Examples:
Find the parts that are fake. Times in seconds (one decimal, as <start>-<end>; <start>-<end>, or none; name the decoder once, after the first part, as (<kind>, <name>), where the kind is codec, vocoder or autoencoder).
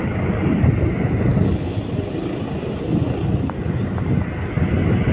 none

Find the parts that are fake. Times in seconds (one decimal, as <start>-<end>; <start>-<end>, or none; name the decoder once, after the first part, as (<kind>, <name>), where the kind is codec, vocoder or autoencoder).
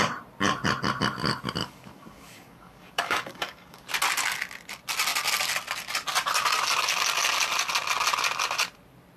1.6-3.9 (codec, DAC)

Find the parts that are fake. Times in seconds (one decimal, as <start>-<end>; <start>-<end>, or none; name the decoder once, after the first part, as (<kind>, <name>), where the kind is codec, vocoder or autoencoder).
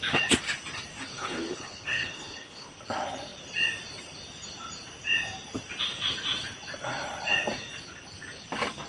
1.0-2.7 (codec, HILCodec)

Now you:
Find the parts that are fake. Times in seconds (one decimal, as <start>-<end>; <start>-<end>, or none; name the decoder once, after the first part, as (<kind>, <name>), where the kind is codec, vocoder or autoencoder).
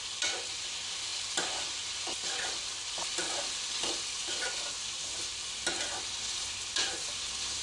none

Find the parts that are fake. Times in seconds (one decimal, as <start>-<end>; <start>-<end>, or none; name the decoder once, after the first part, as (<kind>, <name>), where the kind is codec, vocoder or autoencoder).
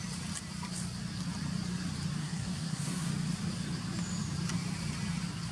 2.2-3.1 (codec, SNAC)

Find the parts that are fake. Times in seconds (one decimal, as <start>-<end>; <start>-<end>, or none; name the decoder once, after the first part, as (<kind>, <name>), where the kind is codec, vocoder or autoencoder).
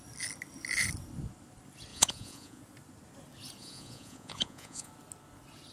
1.9-2.6 (vocoder, Vocos); 3.6-4.9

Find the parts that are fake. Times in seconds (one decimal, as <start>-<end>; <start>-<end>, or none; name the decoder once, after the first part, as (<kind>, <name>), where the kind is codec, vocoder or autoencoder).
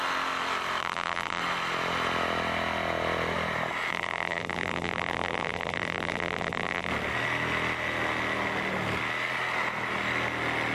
0.8-1.4 (vocoder, BigVGAN v2); 3.9-6.9